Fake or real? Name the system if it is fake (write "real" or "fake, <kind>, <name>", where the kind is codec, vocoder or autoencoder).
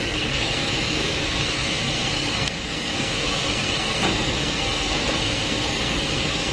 fake, codec, SNAC